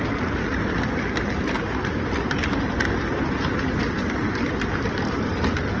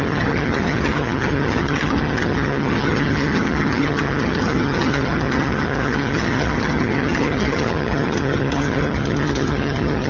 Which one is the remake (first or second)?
second